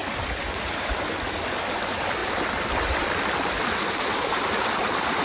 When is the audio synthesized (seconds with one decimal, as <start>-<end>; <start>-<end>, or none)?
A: 0.0-1.5